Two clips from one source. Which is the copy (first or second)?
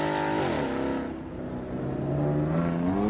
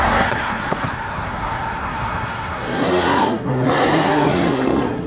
second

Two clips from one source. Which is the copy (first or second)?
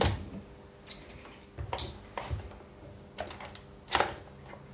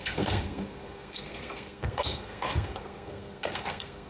second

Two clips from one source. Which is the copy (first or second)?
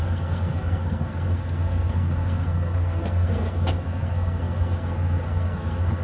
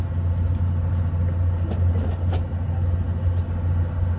first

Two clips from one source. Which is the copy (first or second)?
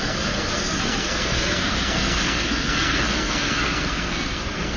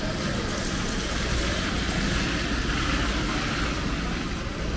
first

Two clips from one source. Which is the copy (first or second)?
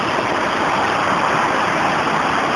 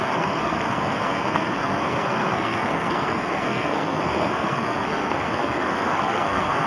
second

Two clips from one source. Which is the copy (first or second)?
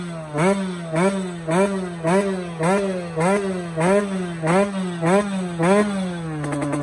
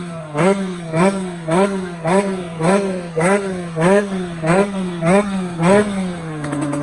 second